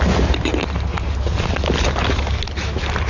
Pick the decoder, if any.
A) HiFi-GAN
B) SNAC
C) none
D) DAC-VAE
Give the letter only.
C